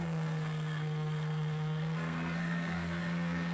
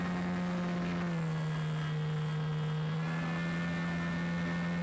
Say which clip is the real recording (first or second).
second